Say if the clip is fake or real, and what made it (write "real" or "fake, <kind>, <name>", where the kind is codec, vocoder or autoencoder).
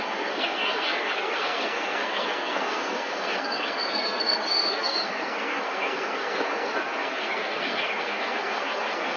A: fake, codec, SNAC